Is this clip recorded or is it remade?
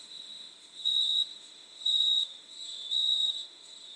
remade